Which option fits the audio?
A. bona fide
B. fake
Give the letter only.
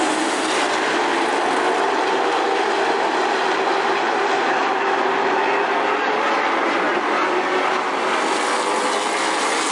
A